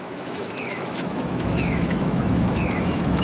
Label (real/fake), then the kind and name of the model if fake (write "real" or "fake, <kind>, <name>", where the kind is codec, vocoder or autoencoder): fake, autoencoder, DAC-VAE